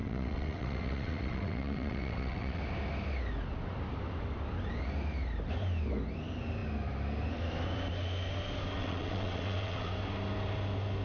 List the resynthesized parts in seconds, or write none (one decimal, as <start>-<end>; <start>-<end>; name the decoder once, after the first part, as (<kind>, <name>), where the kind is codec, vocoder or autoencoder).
0.0-2.6 (vocoder, WaveNeXt); 8.8-9.9